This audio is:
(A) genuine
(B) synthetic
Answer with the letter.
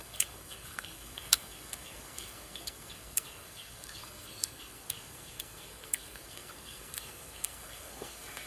B